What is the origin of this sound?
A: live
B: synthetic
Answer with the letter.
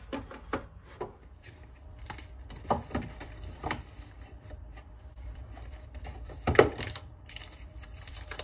B